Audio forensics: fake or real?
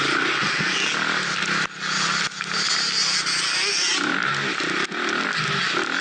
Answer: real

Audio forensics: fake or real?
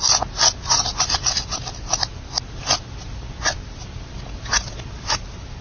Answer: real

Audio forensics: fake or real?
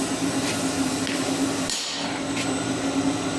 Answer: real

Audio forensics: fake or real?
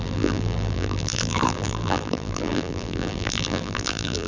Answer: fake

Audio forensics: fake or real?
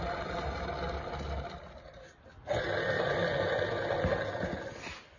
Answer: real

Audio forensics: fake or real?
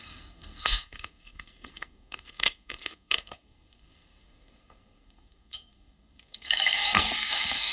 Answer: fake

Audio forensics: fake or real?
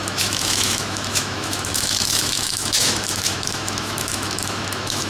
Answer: fake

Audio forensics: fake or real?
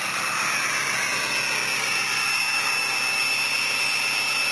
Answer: real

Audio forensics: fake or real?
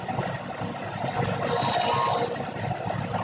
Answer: real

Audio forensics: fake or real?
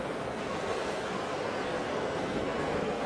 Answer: fake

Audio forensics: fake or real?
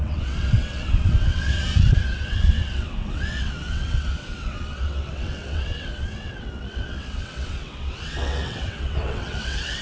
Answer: fake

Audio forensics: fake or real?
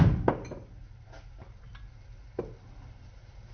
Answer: real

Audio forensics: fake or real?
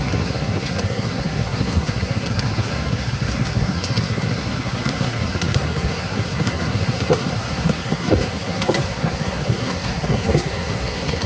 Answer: fake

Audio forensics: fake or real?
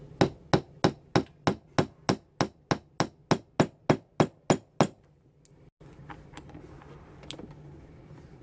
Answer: real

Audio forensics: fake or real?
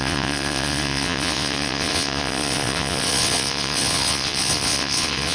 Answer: fake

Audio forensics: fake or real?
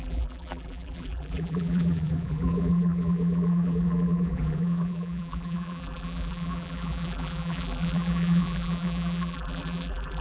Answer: fake